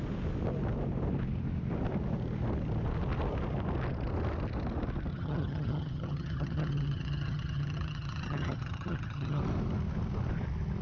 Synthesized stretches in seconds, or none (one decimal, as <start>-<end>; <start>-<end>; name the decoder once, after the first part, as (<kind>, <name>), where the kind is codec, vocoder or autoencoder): 5.1-9.4 (vocoder, HiFi-GAN)

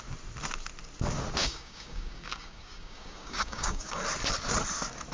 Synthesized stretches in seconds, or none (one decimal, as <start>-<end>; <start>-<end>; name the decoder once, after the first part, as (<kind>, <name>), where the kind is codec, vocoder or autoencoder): 1.4-4.0 (codec, DAC)

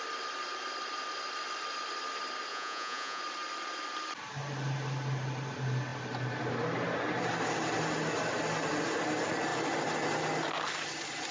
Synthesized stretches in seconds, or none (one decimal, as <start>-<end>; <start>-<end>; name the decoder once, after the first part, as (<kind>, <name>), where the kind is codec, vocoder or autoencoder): 2.5-3.2 (vocoder, Vocos)